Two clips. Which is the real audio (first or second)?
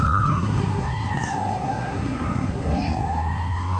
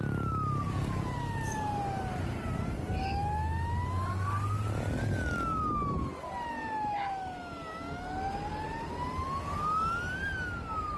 second